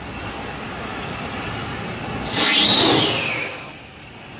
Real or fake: real